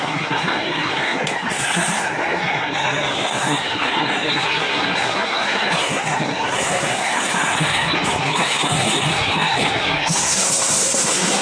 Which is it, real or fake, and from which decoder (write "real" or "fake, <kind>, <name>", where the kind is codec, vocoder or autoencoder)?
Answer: fake, codec, SNAC